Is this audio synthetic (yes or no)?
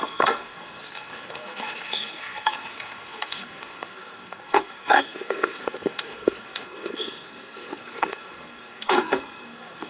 yes